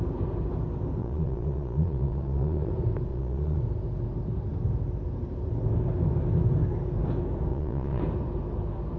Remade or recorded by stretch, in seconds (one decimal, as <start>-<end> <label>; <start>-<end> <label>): 0.0-1.0 recorded; 1.0-2.7 remade; 2.7-3.1 recorded; 3.1-3.6 remade; 3.6-7.5 recorded; 7.5-8.0 remade; 8.0-9.0 recorded